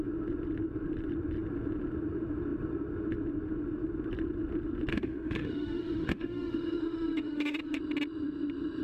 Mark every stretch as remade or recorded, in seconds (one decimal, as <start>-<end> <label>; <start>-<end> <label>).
0.0-4.9 recorded; 4.9-7.8 remade; 7.8-8.8 recorded